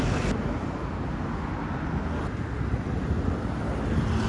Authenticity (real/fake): real